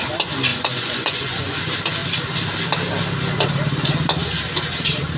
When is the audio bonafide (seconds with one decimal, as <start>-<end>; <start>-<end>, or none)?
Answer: 0.0-0.5; 1.6-5.2